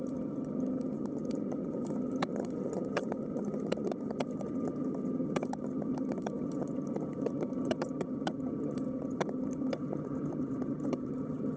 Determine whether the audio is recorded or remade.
remade